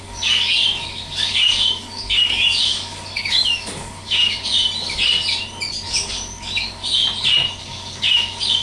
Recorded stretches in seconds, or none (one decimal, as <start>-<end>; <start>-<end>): 4.6-6.0; 7.0-7.6